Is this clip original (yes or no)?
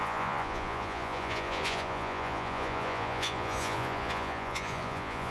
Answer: no